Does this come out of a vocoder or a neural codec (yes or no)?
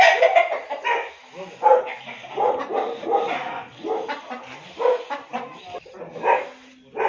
no